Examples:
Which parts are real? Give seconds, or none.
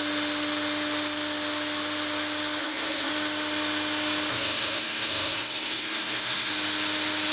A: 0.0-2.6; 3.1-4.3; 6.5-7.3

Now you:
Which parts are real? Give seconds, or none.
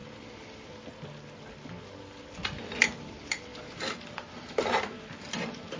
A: 0.0-5.8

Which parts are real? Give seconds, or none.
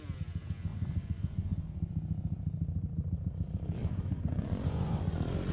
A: 0.0-0.7; 1.7-3.8; 5.1-5.5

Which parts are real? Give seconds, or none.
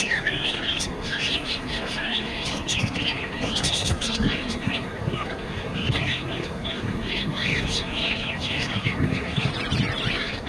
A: 9.5-10.1